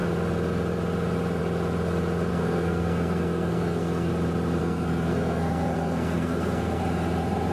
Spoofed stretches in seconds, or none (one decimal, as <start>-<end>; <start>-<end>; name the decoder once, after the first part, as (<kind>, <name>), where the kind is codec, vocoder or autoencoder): 2.3-4.1 (codec, SNAC); 4.6-6.8